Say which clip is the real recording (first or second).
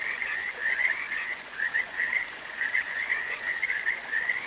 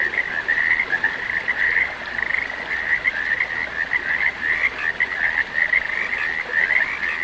second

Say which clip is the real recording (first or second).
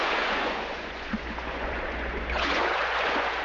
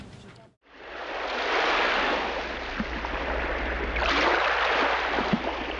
second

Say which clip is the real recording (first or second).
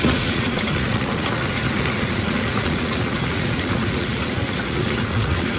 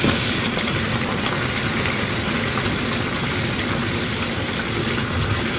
second